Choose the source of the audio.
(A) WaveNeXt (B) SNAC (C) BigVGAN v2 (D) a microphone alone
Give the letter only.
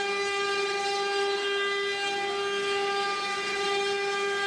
D